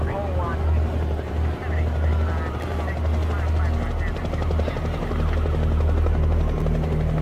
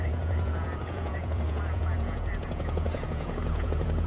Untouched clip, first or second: first